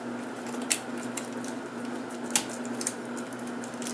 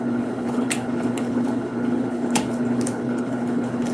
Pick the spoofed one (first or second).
second